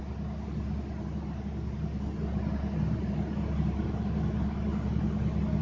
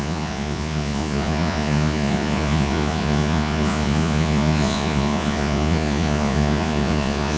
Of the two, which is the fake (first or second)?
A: second